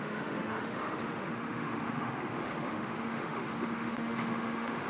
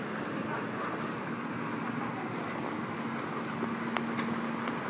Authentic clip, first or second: second